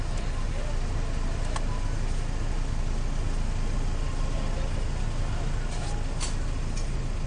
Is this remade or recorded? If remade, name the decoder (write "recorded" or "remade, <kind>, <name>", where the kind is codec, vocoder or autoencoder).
recorded